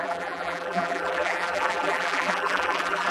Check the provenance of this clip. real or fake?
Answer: fake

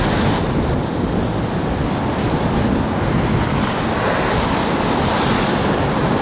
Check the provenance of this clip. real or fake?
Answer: real